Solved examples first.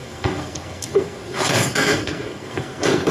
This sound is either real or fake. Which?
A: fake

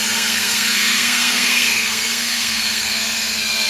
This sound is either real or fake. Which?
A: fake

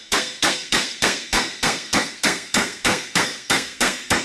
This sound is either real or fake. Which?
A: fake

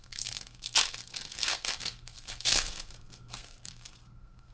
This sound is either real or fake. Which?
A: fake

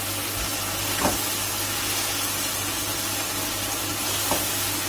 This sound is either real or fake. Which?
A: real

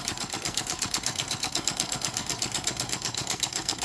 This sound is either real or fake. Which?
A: fake